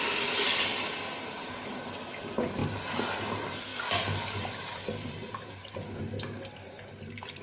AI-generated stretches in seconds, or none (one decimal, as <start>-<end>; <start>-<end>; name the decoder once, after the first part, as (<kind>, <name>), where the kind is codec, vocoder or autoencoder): none